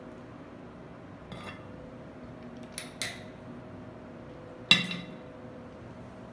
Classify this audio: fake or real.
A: real